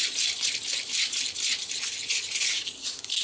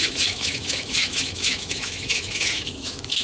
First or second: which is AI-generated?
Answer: second